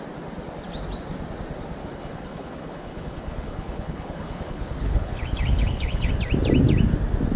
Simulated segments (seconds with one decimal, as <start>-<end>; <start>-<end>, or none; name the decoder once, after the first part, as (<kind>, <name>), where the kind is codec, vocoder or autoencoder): 1.8-6.1 (codec, HILCodec)